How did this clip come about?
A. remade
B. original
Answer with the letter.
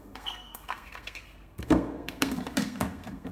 A